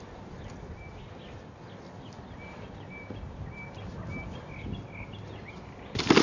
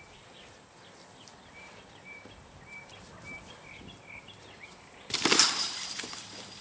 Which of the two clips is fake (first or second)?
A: second